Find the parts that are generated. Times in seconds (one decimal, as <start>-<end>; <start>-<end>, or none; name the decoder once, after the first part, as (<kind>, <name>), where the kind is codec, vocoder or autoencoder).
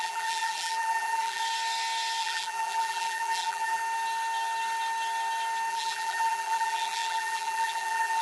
0.0-1.4 (vocoder, BigVGAN v2); 2.2-3.8; 5.7-8.2